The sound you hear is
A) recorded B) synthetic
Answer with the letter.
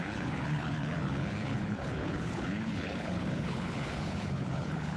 B